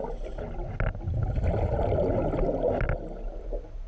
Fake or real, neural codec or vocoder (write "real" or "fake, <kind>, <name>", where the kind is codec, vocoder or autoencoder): real